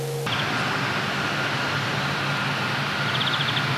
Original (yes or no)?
yes